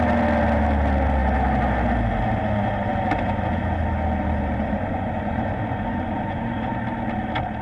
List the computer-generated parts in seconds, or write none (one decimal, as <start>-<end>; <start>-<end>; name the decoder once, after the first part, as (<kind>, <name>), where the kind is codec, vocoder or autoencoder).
4.6-6.7 (vocoder, Vocos)

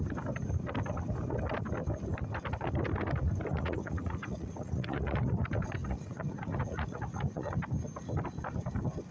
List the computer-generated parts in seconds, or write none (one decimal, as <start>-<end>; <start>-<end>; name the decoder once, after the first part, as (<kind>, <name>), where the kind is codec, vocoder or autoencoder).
3.5-5.3 (vocoder, Vocos); 5.8-7.5